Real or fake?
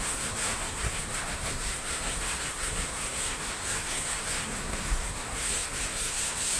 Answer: fake